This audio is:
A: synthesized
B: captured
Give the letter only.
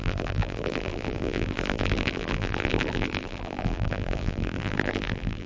A